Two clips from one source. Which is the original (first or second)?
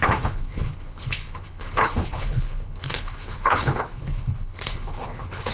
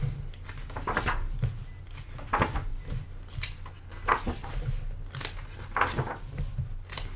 second